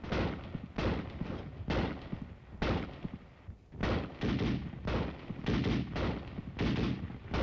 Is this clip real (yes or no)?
yes